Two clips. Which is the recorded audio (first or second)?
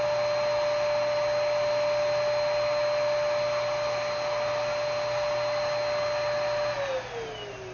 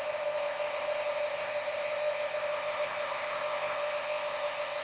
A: first